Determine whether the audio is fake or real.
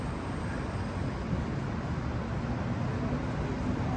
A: real